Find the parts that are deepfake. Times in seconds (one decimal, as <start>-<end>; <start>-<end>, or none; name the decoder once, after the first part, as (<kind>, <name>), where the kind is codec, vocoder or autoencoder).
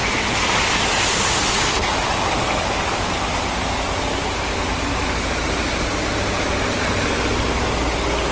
none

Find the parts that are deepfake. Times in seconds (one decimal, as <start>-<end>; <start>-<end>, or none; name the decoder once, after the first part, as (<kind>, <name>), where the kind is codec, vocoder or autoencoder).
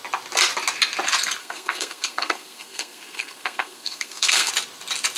1.4-4.5 (codec, SNAC)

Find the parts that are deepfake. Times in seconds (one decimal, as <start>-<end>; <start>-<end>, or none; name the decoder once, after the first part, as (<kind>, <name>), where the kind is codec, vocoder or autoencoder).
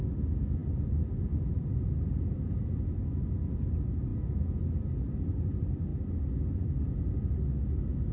4.1-4.6 (vocoder, Vocos)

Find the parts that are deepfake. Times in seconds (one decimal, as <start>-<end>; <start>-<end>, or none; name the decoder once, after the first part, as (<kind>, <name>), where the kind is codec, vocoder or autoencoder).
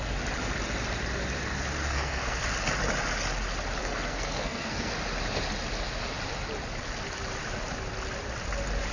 1.8-2.4 (codec, SNAC); 3.8-4.9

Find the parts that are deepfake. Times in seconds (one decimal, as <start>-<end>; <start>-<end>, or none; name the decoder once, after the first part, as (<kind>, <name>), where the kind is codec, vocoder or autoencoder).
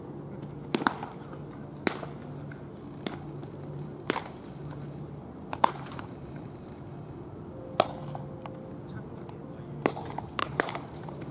3.4-7.5 (vocoder, BigVGAN v2); 10.4-11.3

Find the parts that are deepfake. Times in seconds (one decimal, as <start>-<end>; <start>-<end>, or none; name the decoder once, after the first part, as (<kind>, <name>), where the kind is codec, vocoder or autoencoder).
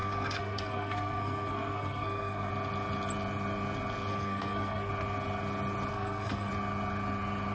0.0-2.5 (codec, SNAC); 4.1-4.9; 5.9-6.5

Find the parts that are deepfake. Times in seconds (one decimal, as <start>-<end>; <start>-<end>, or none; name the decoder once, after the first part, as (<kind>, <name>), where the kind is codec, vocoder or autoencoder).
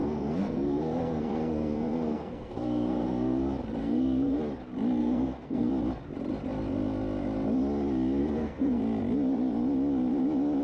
0.0-3.4 (codec, SNAC); 3.8-4.4; 5.0-5.7; 8.2-8.8